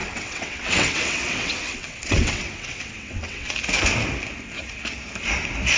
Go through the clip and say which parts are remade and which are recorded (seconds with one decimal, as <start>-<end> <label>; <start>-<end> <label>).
0.0-3.5 remade; 3.5-5.8 recorded